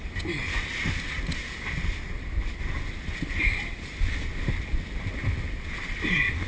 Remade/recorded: recorded